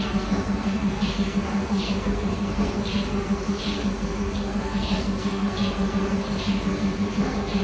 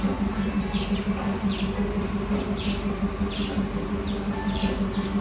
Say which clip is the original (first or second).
second